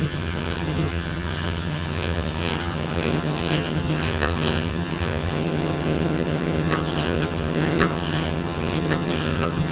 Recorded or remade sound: remade